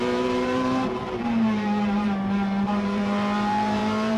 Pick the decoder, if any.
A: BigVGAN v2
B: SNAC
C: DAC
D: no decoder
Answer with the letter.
A